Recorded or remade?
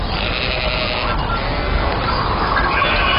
recorded